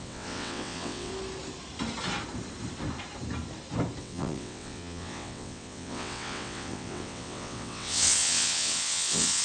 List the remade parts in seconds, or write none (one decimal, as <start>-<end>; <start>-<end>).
0.0-1.1; 4.0-9.4